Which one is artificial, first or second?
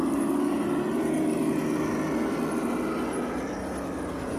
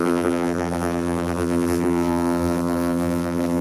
second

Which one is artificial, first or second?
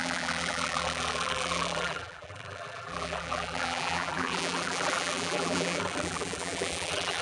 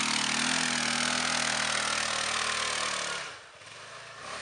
first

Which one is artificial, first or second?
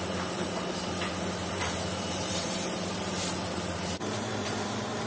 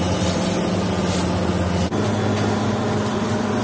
first